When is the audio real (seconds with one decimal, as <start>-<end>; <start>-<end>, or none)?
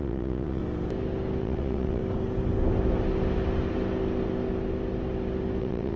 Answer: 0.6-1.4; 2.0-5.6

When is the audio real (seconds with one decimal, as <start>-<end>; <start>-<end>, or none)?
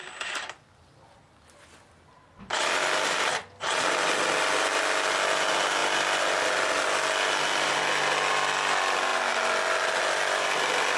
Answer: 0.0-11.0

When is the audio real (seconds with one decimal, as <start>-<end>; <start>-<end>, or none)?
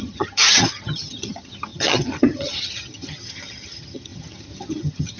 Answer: none